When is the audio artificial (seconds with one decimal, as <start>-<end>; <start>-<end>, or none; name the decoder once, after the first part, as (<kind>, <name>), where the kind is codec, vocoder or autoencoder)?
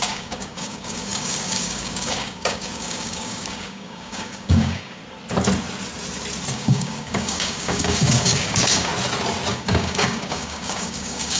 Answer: 0.0-5.0 (codec, DAC); 6.5-8.9; 9.5-11.4